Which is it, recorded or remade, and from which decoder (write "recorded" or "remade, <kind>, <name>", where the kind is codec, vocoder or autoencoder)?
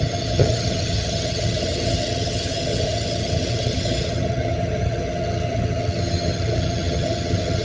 remade, vocoder, HiFi-GAN